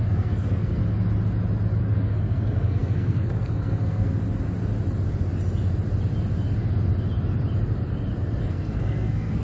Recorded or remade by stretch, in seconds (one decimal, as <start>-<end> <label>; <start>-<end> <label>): 0.0-0.8 remade; 0.8-1.8 recorded; 1.8-4.1 remade; 4.1-8.4 recorded; 8.4-9.4 remade